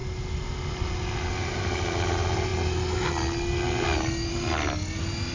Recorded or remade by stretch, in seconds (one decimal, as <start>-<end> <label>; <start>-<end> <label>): 0.0-5.3 recorded